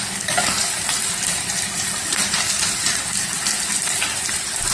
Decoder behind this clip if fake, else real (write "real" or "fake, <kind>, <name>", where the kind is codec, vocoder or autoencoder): real